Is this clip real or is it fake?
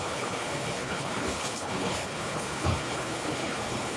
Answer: fake